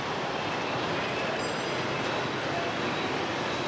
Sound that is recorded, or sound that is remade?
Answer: recorded